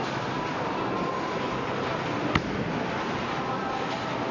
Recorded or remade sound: recorded